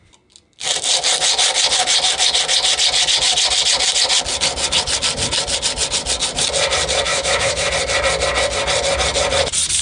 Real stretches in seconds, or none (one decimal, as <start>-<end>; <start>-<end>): 0.0-7.1; 7.7-9.8